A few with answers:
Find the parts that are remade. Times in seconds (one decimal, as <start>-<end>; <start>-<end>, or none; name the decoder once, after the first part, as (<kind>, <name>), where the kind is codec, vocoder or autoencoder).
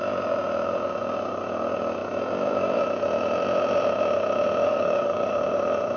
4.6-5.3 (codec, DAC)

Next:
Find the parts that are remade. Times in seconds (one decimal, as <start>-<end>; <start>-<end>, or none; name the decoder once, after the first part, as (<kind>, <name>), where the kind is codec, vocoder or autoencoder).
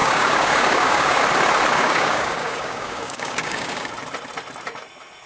0.0-1.2 (codec, DAC); 1.7-3.9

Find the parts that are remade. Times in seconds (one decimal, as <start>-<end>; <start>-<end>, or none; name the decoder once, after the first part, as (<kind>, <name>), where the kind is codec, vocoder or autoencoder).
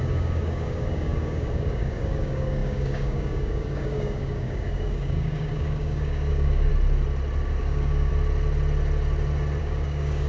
0.0-6.7 (codec, DAC); 7.6-8.1; 9.6-10.3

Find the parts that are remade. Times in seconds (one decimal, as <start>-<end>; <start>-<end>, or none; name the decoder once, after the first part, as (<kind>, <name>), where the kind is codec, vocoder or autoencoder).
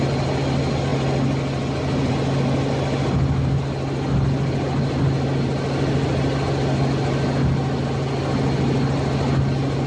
none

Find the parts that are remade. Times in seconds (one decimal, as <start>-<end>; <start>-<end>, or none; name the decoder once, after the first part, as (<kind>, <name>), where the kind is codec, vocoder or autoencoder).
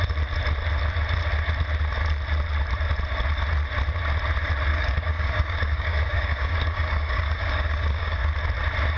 4.7-8.3 (codec, DAC)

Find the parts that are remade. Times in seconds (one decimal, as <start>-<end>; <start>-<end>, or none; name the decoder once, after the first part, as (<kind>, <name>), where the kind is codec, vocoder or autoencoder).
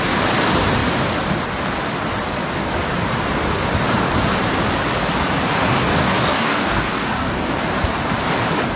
6.0-7.5 (codec, DAC)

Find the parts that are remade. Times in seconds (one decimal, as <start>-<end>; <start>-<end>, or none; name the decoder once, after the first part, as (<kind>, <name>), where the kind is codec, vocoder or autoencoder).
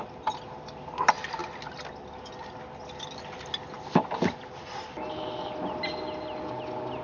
none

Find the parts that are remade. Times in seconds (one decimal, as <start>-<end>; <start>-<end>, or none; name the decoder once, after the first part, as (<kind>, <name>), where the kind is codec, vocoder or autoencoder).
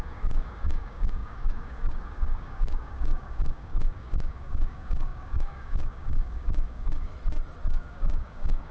0.0-7.1 (codec, DAC); 7.7-8.7